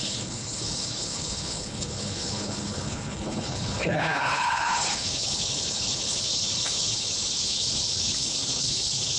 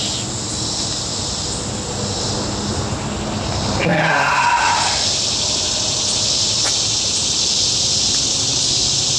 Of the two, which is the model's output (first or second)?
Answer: first